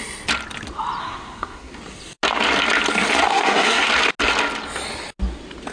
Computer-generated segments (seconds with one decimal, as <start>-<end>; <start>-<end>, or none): 1.0-1.8; 3.3-3.9